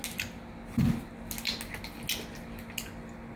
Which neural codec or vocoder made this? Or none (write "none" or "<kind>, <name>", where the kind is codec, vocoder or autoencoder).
none